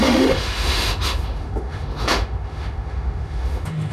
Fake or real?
fake